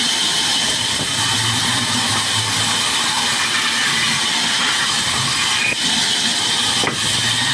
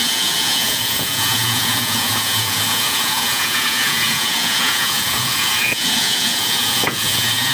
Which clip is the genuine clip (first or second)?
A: first